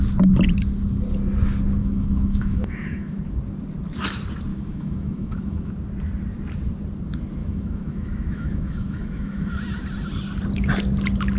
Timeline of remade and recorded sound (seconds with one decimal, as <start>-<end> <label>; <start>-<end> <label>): 0.0-1.8 recorded; 1.8-3.2 remade; 3.2-4.5 recorded; 4.5-5.7 remade; 5.7-7.4 recorded; 7.4-9.5 remade; 9.5-11.4 recorded